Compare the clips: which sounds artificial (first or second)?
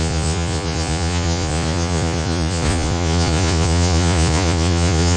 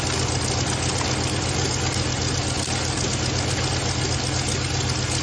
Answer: first